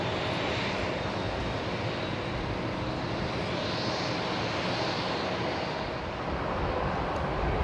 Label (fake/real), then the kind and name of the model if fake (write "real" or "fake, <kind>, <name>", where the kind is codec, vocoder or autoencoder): real